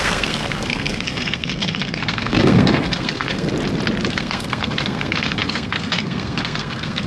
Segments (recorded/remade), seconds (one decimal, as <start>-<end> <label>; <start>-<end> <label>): 0.0-3.5 remade; 3.5-4.1 recorded; 4.1-7.1 remade